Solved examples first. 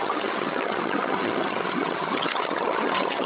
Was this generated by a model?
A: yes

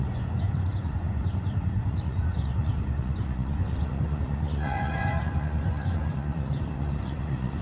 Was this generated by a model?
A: yes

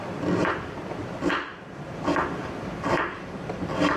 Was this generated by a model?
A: yes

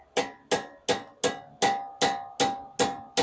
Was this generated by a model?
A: no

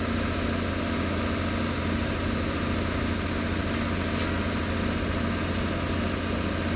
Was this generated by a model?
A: no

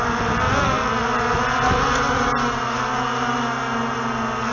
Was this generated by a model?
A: no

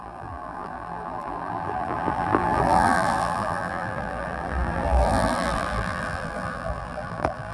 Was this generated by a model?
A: yes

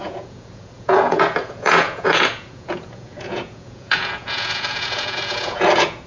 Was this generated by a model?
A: yes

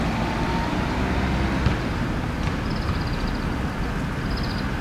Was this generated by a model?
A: no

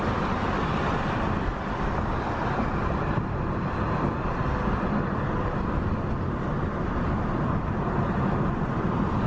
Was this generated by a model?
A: no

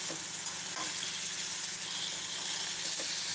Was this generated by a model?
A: no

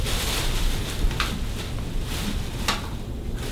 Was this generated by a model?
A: no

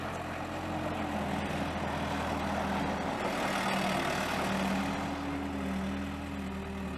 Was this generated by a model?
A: no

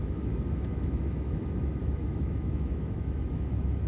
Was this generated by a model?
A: yes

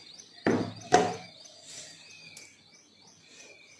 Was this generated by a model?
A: no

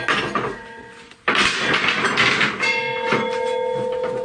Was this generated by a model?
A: no